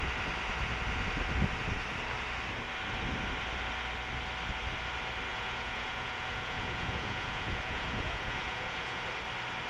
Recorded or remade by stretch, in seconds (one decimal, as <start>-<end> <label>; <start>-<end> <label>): 0.0-5.3 recorded; 5.3-9.1 remade; 9.1-9.7 recorded